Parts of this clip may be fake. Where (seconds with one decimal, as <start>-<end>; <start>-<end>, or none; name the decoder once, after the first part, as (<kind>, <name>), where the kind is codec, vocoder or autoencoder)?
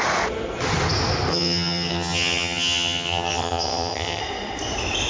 1.3-4.2 (vocoder, HiFi-GAN)